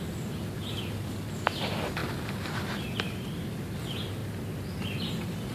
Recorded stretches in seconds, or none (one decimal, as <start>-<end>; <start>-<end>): 0.0-2.0; 3.6-5.5